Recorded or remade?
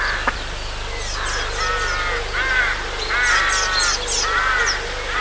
recorded